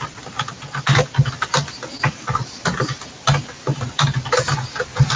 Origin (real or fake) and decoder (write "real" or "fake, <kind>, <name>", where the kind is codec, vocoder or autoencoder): real